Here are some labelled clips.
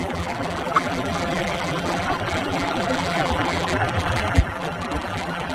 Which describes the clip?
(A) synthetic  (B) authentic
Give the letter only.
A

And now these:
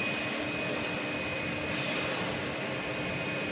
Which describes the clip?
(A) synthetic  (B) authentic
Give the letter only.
B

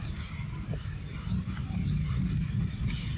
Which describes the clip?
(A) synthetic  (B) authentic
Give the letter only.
B